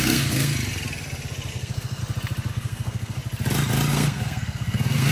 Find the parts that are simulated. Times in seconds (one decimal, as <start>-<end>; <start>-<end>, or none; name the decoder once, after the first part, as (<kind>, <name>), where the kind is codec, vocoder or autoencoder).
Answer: 0.0-0.5 (codec, SNAC); 1.5-2.0; 2.5-3.2; 3.9-5.1